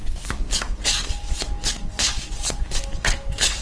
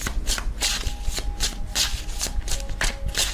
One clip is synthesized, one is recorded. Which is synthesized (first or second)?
first